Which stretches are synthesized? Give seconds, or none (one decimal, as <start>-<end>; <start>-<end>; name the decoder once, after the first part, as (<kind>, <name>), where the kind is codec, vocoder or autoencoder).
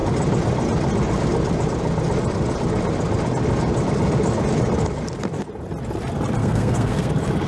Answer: 6.4-7.1 (codec, SNAC)